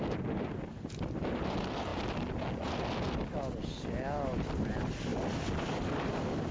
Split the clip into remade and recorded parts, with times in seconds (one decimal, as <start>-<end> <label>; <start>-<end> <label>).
0.0-6.5 recorded